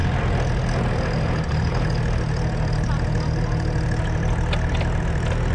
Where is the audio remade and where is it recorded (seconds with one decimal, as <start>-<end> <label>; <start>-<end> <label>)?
0.0-5.5 recorded